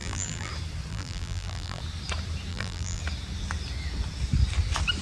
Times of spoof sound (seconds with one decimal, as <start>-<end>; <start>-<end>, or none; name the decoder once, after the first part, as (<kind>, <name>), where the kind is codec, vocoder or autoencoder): 0.0-0.5 (vocoder, BigVGAN v2); 0.9-1.8; 2.5-3.0